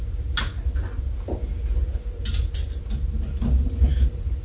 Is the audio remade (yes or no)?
no